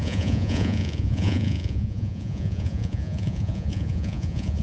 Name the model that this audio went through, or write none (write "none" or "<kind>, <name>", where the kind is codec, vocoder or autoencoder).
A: vocoder, Vocos